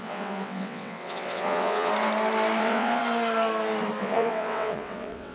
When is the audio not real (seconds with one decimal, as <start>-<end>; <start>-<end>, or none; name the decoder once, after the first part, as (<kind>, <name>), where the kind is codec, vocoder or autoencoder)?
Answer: 0.0-1.9 (vocoder, WaveNeXt); 2.6-3.0; 4.0-5.3